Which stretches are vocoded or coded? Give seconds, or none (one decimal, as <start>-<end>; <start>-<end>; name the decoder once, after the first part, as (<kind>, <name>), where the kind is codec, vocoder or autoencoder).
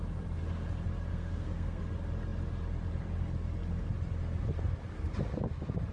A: 1.1-1.8 (codec, SNAC)